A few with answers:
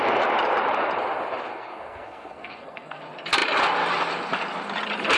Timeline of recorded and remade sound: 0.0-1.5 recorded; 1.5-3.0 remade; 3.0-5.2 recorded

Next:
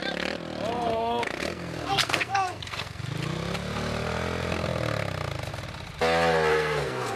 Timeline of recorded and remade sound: 0.0-0.7 recorded; 0.7-3.1 remade; 3.1-6.5 recorded; 6.5-7.2 remade

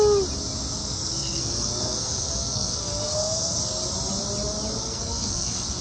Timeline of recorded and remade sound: 0.0-0.8 recorded; 0.8-3.6 remade; 3.6-4.8 recorded; 4.8-5.8 remade